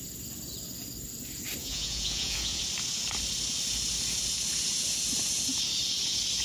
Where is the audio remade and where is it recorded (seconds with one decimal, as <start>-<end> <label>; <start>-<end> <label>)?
0.0-1.6 recorded; 1.6-2.6 remade; 2.6-6.4 recorded